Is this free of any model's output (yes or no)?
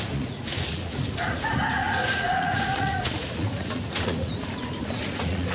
no